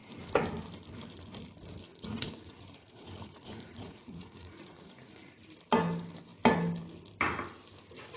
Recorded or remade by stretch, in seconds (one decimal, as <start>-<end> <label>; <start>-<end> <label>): 0.0-1.9 recorded; 1.9-5.4 remade; 5.4-8.2 recorded